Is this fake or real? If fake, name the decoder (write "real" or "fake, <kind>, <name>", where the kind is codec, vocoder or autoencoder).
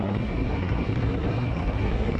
fake, codec, SNAC